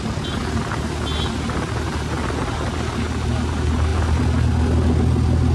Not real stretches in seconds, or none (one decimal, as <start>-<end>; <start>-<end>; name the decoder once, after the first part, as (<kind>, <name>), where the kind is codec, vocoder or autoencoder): none